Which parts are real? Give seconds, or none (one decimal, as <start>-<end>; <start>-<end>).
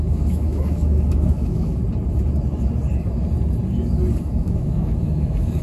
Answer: 1.8-4.2